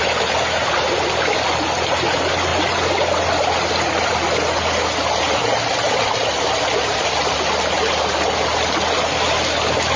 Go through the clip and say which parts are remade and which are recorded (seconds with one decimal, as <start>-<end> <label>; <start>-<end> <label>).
0.0-10.0 recorded